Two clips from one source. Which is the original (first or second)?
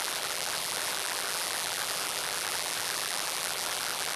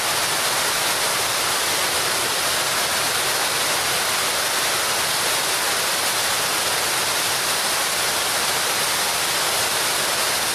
second